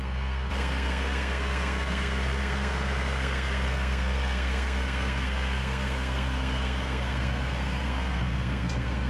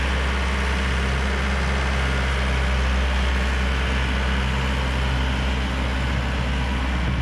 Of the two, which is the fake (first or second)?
first